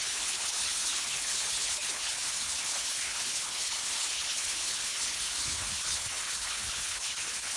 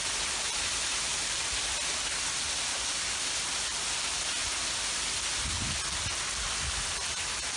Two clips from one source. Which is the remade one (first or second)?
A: first